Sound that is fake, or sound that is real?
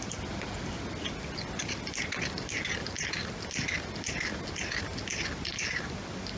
real